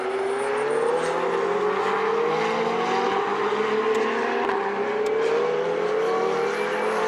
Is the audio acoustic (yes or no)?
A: yes